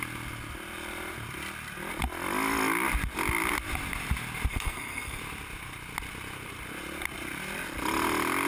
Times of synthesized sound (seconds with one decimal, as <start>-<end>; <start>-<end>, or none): 4.5-5.2